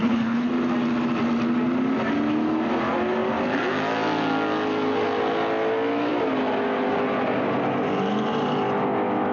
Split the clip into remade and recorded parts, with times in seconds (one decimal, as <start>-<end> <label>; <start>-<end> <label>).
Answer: 0.0-0.5 remade; 0.5-9.3 recorded